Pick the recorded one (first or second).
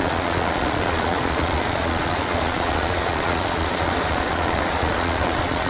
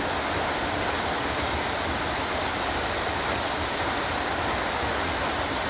second